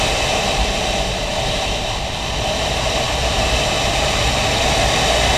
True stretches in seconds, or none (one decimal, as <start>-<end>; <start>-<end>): 0.0-1.3; 4.2-5.4